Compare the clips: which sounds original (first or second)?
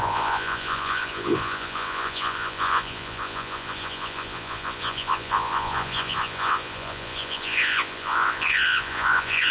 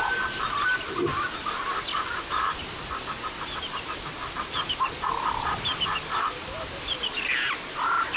second